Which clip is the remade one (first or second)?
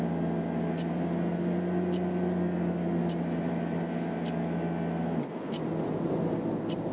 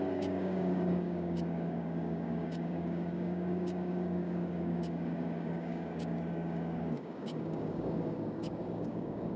second